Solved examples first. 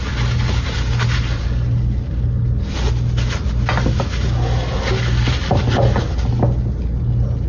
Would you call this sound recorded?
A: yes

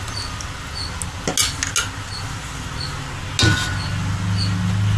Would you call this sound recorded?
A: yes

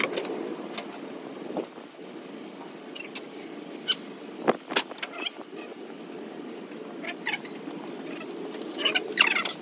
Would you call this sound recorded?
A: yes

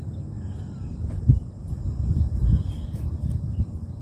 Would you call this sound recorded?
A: no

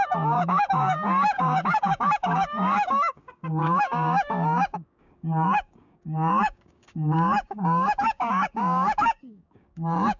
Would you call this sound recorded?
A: no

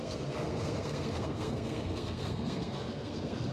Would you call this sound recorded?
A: no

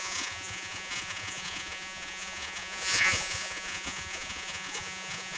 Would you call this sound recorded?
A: no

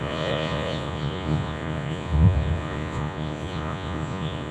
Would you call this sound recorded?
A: no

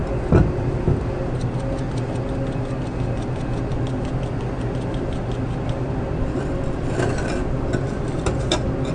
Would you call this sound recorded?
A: yes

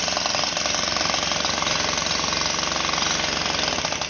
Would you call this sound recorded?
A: yes